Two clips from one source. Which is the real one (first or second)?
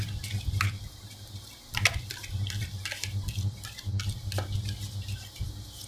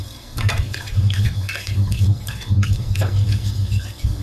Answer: first